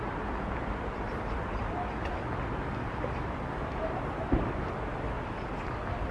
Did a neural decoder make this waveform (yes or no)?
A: no